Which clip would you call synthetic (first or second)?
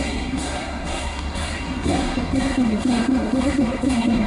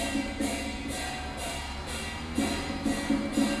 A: first